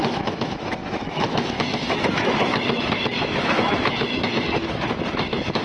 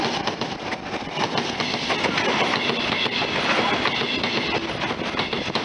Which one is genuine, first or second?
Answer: second